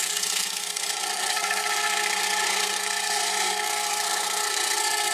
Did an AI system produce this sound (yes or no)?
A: yes